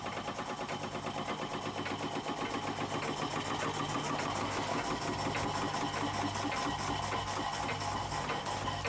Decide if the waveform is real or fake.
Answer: real